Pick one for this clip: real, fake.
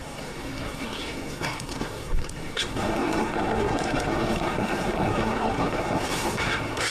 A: fake